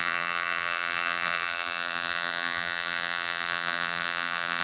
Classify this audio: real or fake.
fake